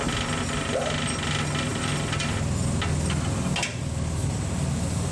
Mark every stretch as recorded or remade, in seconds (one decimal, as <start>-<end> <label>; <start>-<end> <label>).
0.0-5.1 recorded